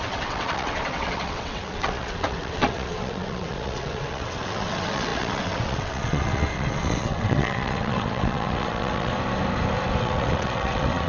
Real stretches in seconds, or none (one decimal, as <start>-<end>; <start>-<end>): 9.1-10.0